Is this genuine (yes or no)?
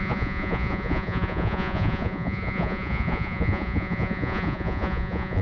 no